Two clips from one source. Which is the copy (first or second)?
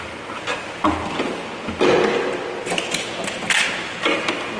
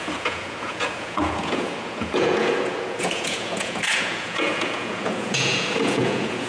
second